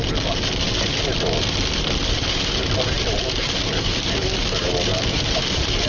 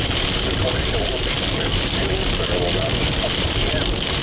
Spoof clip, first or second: second